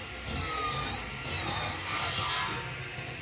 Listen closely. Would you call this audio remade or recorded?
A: recorded